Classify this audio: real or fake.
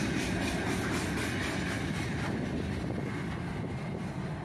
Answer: real